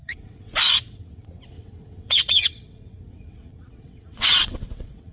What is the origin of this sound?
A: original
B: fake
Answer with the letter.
B